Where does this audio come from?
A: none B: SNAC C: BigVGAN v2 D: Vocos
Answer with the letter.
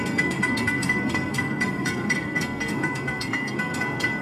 B